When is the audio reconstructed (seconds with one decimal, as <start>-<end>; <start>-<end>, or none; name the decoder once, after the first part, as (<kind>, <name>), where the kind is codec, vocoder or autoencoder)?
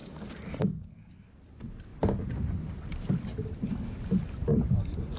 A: 0.0-1.1 (codec, DAC)